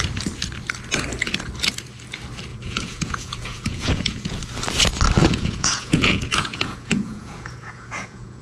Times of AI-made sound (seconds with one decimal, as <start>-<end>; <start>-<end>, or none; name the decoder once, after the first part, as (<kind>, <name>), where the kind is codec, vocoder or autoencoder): 2.5-4.4 (vocoder, Vocos); 5.2-8.4